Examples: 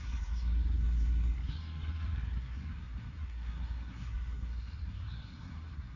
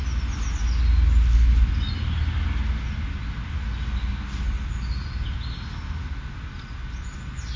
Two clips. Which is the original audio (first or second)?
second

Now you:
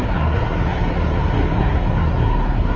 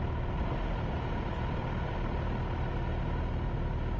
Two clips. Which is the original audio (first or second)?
second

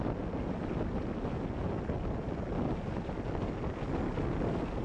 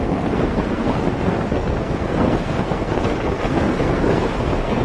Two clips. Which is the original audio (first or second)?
first